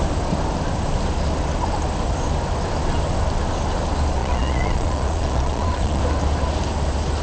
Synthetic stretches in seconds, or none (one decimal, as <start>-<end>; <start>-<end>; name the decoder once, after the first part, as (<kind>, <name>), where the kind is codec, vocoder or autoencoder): 4.2-6.0 (vocoder, Vocos)